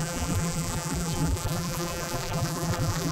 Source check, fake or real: fake